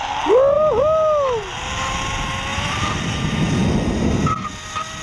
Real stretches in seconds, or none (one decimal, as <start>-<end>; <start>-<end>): 0.0-2.5; 3.4-5.0